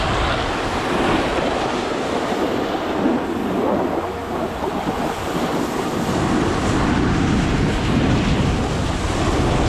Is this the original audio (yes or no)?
yes